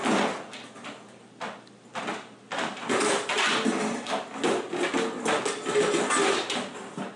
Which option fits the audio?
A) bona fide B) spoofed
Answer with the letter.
A